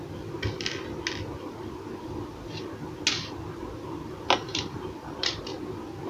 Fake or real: real